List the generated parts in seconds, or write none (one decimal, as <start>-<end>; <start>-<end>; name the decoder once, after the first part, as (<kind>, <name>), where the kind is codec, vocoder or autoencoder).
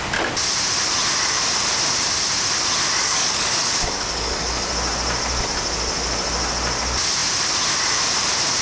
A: 3.0-4.7 (codec, DAC)